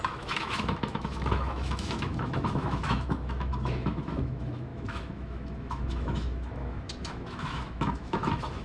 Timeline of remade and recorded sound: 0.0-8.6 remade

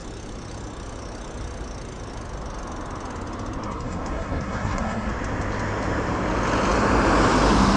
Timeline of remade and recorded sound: 0.0-3.6 recorded; 3.6-5.1 remade; 5.1-7.8 recorded

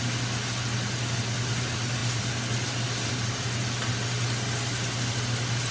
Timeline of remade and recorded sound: 0.0-5.7 recorded

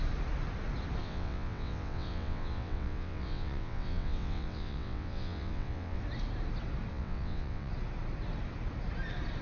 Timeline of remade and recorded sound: 0.0-1.0 recorded; 1.0-6.0 remade; 6.0-6.9 recorded; 6.9-7.7 remade; 7.7-9.4 recorded